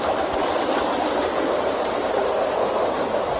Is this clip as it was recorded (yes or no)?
yes